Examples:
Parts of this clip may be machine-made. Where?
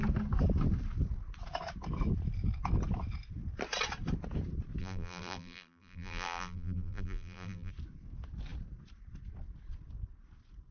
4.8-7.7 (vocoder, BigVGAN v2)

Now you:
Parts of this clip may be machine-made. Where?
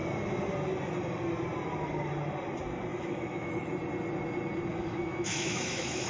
2.9-3.7 (autoencoder, DAC-VAE); 4.7-6.1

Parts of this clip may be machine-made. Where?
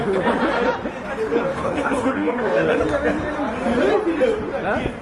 1.5-2.8 (codec, DAC)